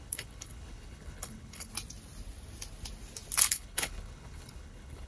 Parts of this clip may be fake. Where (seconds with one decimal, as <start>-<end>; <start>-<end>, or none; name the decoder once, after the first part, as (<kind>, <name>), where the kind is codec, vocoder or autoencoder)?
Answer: 0.0-1.7 (codec, HILCodec); 3.5-5.1